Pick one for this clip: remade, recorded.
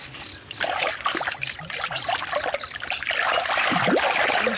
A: recorded